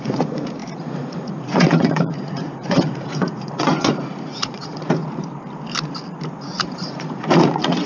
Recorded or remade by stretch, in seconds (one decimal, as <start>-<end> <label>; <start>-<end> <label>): 0.0-5.0 remade; 5.0-6.4 recorded; 6.4-7.9 remade